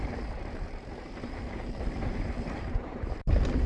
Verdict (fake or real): fake